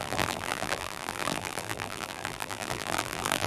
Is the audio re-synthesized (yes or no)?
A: yes